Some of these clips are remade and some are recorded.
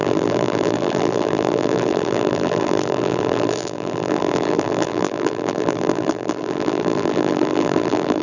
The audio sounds remade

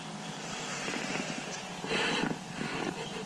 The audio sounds remade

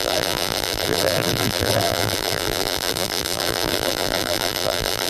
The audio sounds remade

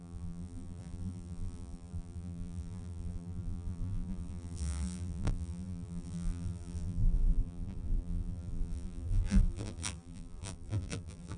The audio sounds remade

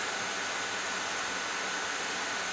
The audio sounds recorded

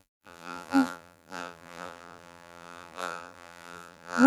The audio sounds remade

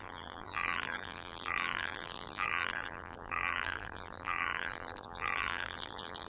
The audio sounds remade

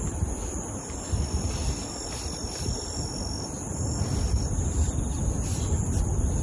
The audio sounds recorded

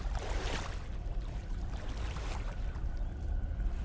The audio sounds recorded